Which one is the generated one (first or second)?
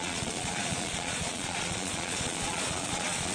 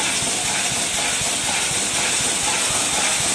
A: first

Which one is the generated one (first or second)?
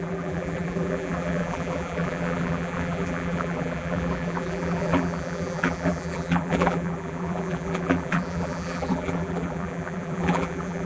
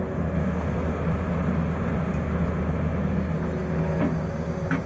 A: first